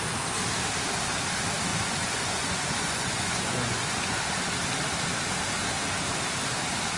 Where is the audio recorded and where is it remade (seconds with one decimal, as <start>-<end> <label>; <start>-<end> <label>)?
0.0-1.7 recorded; 1.7-4.2 remade; 4.2-7.0 recorded